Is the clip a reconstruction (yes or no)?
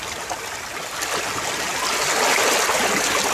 no